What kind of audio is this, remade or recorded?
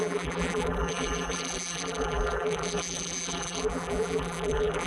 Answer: remade